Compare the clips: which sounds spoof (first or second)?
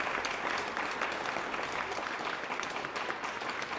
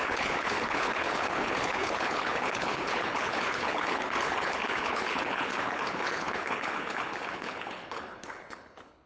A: second